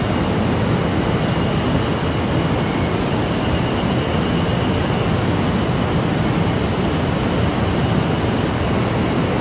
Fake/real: real